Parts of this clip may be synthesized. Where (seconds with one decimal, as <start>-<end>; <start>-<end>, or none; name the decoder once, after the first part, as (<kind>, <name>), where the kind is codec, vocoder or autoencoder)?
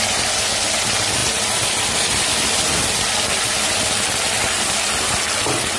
none